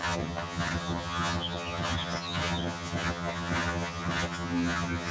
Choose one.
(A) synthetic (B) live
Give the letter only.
A